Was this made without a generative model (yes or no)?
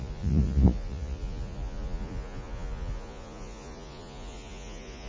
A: no